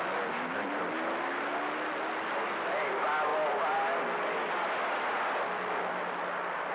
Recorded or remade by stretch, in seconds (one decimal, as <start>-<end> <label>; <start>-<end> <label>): 0.0-6.7 recorded